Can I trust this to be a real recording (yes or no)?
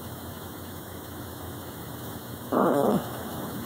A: no